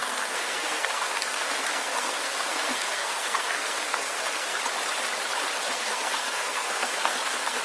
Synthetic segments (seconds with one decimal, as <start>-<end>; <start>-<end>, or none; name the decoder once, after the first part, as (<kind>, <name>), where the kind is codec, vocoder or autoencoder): 0.0-4.6 (codec, SNAC); 5.6-7.6